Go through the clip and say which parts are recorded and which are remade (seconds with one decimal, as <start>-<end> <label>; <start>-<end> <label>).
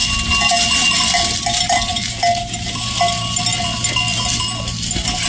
0.0-5.3 recorded